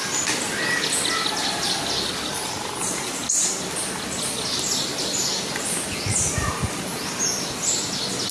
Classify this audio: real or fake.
real